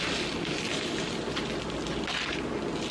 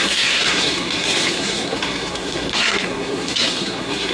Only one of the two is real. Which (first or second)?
first